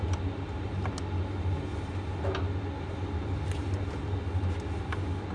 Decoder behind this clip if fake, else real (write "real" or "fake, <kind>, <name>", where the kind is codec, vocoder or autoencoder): real